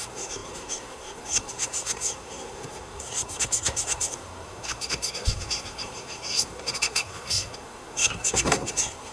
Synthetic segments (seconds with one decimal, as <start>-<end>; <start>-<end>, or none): 0.0-9.1